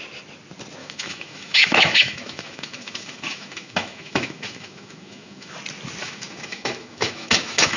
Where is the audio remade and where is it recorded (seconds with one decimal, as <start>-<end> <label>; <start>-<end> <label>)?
0.0-0.8 recorded; 0.8-5.5 remade; 5.5-6.0 recorded; 6.0-7.8 remade